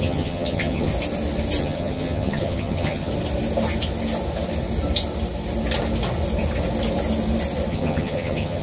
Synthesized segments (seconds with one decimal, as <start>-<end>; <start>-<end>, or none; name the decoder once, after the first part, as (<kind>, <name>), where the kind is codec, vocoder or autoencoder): 0.0-0.9 (vocoder, HiFi-GAN); 1.6-3.1; 7.7-8.6